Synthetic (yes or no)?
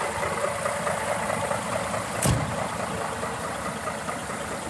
no